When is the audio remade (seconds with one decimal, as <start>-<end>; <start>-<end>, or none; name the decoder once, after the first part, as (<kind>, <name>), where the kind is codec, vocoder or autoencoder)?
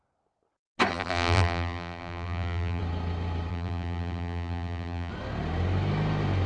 0.9-2.8 (vocoder, BigVGAN v2); 3.5-5.1